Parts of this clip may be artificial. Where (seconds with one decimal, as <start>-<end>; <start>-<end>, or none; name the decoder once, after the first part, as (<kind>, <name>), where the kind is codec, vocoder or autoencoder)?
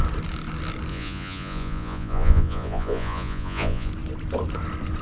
0.9-3.9 (vocoder, Vocos)